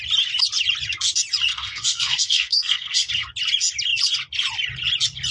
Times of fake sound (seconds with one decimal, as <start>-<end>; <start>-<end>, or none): 1.5-3.1